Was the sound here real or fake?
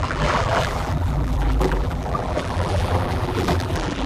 fake